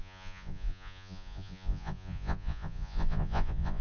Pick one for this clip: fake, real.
fake